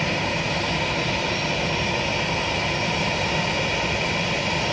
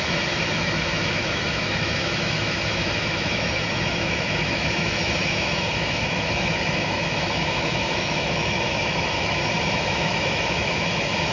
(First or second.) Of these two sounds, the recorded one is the first